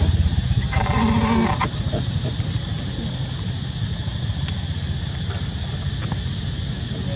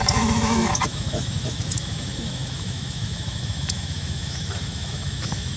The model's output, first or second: second